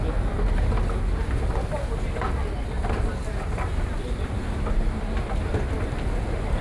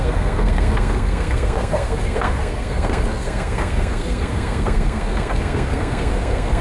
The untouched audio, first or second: first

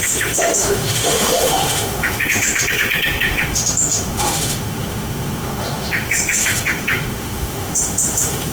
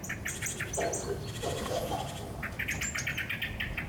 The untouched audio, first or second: second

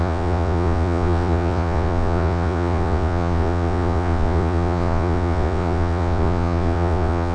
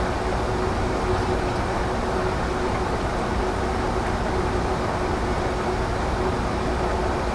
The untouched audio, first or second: second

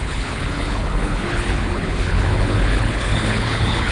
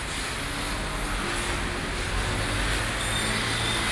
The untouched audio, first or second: second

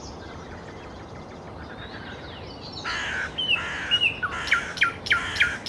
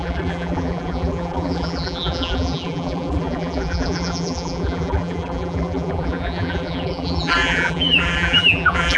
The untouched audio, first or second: first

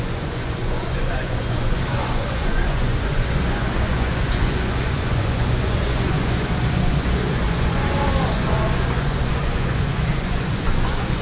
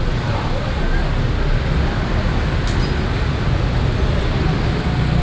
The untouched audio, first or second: second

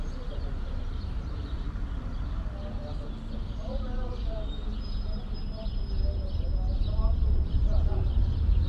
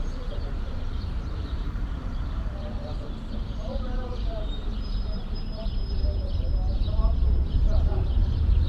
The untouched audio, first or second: first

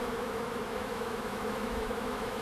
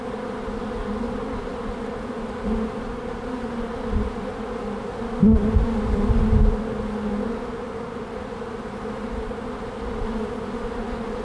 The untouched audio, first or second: second